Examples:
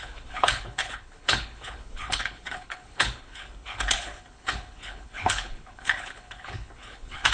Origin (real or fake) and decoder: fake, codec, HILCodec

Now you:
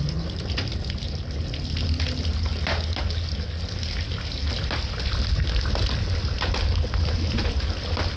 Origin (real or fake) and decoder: real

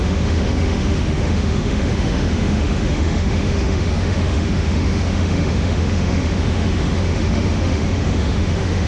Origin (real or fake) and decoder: fake, autoencoder, DAC-VAE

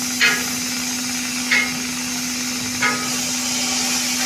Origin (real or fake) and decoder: real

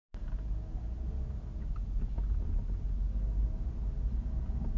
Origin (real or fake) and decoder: real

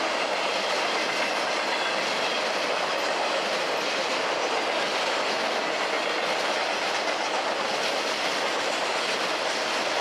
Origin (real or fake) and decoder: real